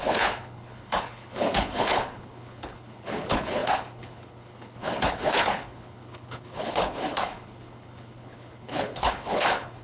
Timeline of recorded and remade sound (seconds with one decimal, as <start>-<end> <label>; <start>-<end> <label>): 0.0-9.8 remade